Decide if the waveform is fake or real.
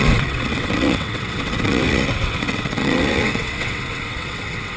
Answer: fake